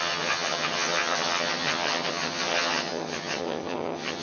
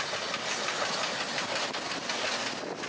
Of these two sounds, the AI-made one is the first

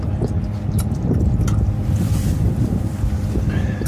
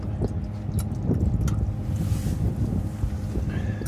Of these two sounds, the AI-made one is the first